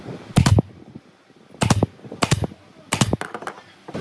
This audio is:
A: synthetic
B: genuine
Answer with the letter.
B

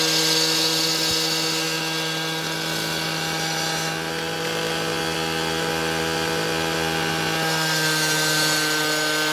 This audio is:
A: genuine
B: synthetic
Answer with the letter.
A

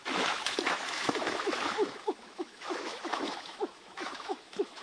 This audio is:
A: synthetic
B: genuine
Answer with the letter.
A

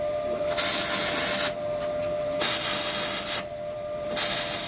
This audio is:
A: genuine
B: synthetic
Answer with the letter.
A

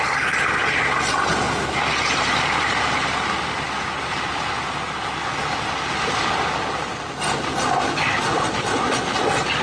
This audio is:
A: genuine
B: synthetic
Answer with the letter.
A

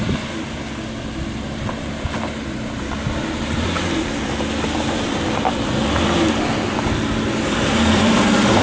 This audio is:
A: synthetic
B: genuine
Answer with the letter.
A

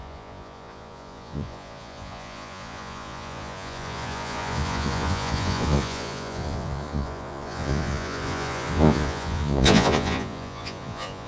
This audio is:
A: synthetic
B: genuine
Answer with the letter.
A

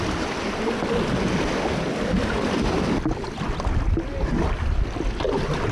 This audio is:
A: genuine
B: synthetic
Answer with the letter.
A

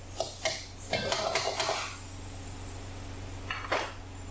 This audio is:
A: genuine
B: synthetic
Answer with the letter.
A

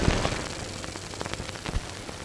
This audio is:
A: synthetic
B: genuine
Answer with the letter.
B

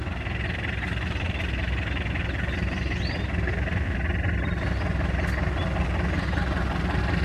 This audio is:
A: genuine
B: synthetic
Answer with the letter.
A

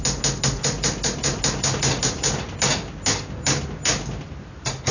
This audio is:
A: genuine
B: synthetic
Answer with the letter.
A